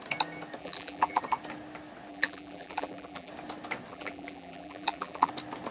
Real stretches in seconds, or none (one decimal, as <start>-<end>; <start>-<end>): 0.0-0.6; 1.2-2.1; 3.3-3.9; 5.3-5.7